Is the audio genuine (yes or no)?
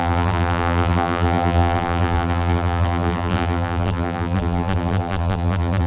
no